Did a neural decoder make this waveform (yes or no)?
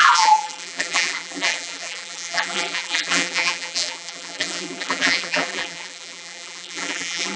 yes